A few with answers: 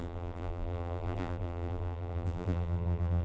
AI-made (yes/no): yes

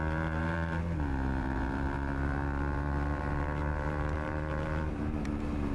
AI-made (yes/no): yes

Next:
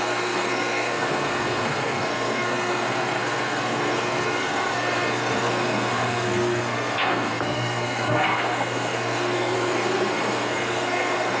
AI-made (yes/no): yes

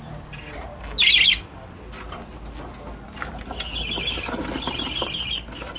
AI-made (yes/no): no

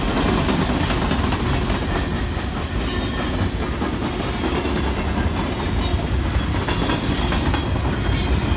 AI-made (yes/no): no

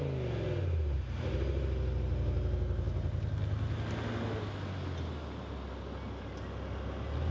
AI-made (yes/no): no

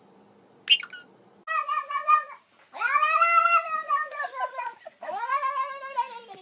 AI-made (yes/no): no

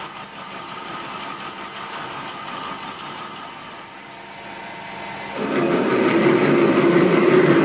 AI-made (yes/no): no